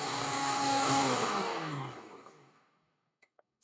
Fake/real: fake